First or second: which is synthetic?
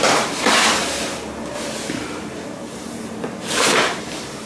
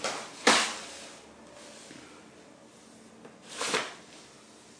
first